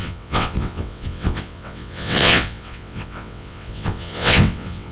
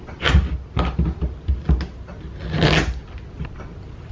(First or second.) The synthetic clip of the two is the first